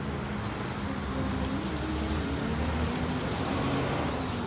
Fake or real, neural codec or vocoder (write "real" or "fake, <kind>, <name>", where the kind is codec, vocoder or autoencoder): real